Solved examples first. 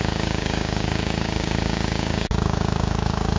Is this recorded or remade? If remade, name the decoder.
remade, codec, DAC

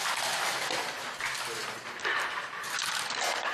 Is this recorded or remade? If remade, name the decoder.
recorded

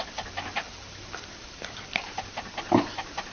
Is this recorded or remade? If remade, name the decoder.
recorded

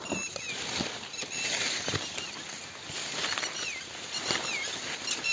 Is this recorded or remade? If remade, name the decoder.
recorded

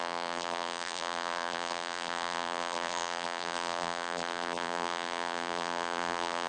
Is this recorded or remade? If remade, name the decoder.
remade, vocoder, BigVGAN v2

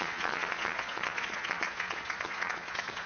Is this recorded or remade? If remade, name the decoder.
remade, vocoder, Vocos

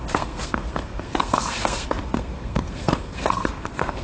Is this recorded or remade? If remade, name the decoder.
remade, codec, SNAC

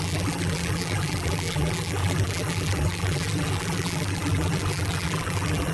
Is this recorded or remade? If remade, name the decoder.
remade, vocoder, BigVGAN v2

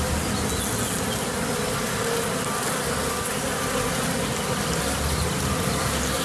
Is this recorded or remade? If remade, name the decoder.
recorded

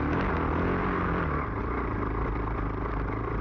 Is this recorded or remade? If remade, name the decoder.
recorded